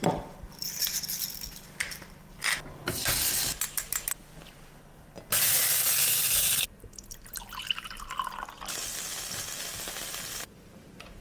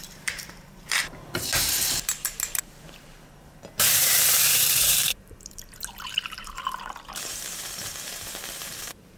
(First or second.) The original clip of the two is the first